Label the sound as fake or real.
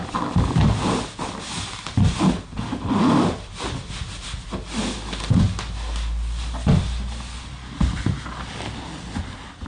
real